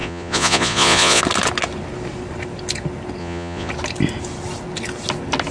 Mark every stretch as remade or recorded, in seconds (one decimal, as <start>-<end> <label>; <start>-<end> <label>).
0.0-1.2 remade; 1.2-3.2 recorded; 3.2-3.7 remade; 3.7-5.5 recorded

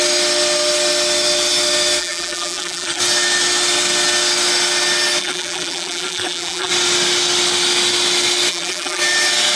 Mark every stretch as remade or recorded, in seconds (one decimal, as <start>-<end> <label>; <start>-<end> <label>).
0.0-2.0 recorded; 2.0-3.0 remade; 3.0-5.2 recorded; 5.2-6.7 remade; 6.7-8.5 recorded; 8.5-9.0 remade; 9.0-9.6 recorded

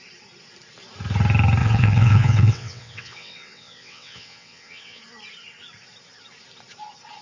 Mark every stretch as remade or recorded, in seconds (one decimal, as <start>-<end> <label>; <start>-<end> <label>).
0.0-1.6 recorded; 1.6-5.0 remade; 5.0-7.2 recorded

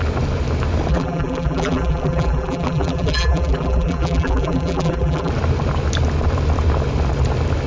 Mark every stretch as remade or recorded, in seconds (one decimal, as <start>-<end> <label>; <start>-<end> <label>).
0.0-0.9 recorded; 0.9-5.3 remade; 5.3-7.7 recorded

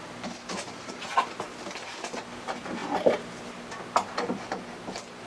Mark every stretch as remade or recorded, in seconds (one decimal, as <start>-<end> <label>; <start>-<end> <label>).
0.0-5.3 recorded

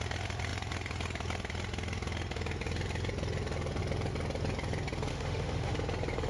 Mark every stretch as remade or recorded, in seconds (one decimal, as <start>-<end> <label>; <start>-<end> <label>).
0.0-5.1 recorded; 5.1-5.7 remade; 5.7-6.3 recorded

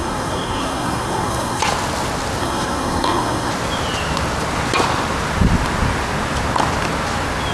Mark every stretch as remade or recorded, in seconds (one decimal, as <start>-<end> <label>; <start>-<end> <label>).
0.0-1.6 remade; 1.6-2.4 recorded; 2.4-3.5 remade; 3.5-7.5 recorded

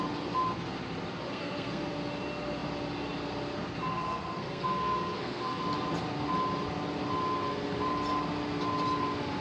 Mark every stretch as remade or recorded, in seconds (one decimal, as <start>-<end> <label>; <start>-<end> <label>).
0.0-1.3 recorded; 1.3-1.9 remade; 1.9-3.9 recorded; 3.9-5.6 remade; 5.6-9.4 recorded